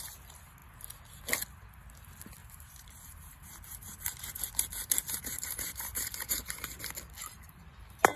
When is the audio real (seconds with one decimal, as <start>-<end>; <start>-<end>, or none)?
0.0-2.4; 6.8-8.2